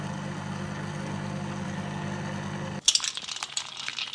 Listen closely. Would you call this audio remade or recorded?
recorded